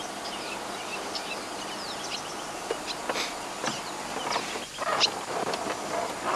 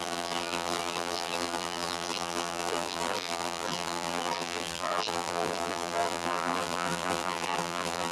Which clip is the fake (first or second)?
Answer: second